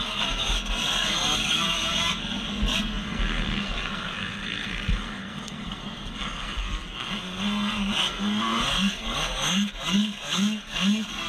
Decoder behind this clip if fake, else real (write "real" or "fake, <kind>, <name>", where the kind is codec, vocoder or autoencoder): fake, codec, SNAC